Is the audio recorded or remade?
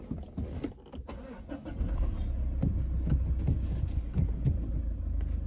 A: recorded